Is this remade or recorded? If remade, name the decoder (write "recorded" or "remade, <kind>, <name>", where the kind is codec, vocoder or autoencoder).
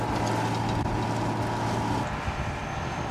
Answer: recorded